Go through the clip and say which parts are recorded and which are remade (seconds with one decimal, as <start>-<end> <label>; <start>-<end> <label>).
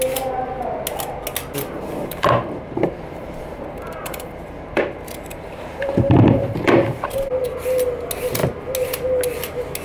0.0-2.0 recorded; 2.0-6.7 remade; 6.7-9.8 recorded